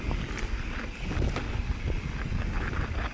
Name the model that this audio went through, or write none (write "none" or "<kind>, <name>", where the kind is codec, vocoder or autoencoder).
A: none